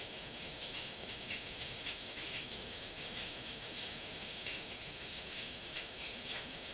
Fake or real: fake